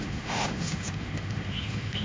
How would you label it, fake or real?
fake